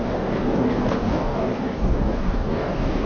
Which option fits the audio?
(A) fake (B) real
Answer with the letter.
A